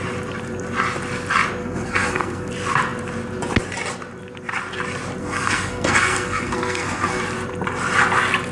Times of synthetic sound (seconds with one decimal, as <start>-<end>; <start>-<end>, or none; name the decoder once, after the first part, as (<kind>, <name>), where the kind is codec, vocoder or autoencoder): 1.6-2.5 (codec, SNAC); 5.2-7.2